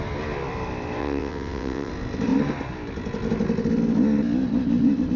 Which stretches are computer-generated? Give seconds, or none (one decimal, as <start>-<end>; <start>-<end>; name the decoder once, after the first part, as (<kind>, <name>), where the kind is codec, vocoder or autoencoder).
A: 1.0-1.9 (vocoder, WaveNeXt)

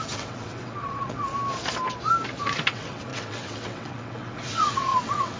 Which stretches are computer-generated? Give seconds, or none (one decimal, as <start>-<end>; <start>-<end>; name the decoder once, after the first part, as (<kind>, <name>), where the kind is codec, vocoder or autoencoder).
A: 0.0-1.3 (vocoder, WaveNeXt); 2.4-5.4